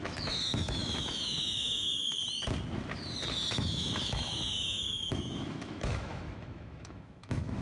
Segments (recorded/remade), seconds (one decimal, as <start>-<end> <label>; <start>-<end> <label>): 0.0-2.2 remade; 2.2-3.5 recorded; 3.5-7.6 remade